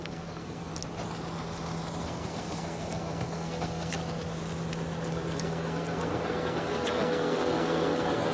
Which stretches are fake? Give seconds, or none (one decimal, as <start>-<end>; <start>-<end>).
0.0-0.7; 2.0-4.0; 5.1-8.3